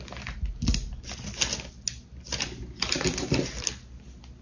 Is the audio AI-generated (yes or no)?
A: no